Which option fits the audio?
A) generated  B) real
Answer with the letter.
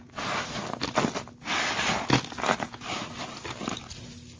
B